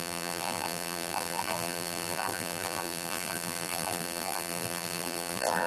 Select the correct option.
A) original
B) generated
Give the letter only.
B